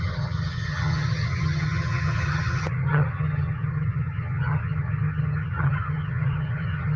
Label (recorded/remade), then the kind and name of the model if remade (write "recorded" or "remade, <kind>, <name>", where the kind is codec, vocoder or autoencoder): remade, vocoder, HiFi-GAN